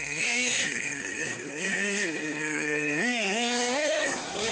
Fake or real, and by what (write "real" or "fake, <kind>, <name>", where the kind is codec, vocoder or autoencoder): fake, codec, SNAC